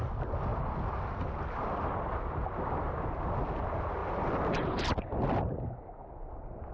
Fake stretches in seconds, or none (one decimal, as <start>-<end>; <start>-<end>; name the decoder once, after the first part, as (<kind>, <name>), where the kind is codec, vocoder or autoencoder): none